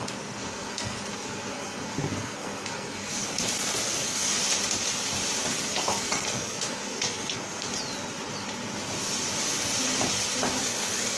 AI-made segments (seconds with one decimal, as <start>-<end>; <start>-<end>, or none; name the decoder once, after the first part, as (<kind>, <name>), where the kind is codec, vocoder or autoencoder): 0.0-4.4 (codec, SNAC); 5.4-7.7; 10.6-11.2